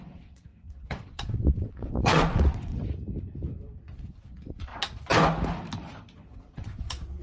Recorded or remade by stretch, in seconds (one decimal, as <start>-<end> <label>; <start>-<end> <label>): 0.0-2.8 remade; 2.8-3.9 recorded; 3.9-4.7 remade; 4.7-6.2 recorded; 6.2-7.2 remade